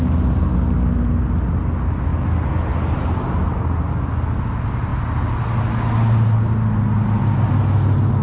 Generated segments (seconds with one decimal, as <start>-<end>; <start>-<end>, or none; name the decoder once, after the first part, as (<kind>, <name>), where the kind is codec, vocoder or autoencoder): none

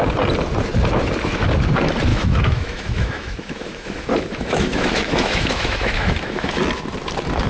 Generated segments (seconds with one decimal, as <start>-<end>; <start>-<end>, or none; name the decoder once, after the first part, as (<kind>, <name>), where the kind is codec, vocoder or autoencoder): 2.1-6.6 (autoencoder, DAC-VAE)

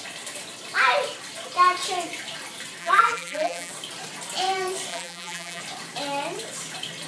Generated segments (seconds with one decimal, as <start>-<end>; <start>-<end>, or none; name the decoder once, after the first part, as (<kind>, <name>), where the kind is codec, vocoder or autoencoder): 2.8-3.7 (vocoder, BigVGAN v2); 4.9-5.6

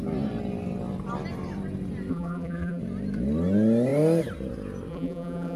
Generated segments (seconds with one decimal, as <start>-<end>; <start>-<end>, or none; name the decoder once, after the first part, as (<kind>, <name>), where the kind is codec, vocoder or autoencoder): 2.1-2.8 (vocoder, BigVGAN v2); 4.9-5.6